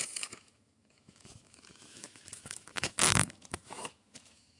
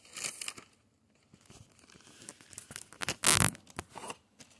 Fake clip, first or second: first